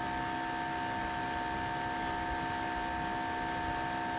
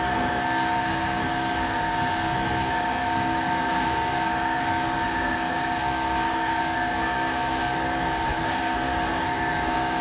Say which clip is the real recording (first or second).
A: first